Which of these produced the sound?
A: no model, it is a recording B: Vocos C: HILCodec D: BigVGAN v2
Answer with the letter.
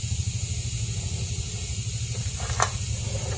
A